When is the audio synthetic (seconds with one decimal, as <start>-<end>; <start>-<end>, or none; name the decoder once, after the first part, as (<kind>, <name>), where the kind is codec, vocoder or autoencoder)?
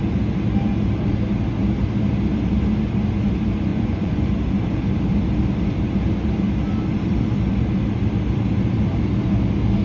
3.7-4.3 (vocoder, Vocos)